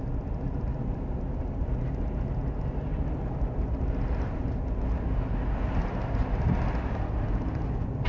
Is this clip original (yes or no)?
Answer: yes